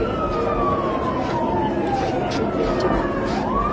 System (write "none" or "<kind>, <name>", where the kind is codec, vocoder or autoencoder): none